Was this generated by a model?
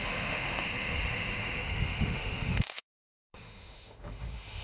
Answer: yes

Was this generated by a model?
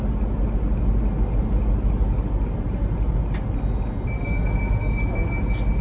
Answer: no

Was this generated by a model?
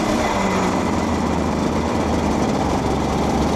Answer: no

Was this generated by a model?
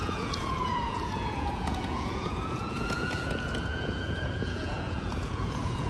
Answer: yes